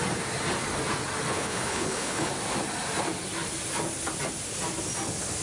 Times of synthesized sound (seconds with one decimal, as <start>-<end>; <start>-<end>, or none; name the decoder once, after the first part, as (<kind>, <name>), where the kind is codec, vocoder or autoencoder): 1.3-2.3 (codec, HILCodec)